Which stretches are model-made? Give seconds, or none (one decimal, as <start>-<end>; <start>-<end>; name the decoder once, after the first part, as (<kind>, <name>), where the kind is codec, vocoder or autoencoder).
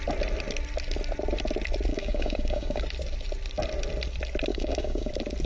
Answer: 1.9-2.8 (codec, DAC); 4.5-5.1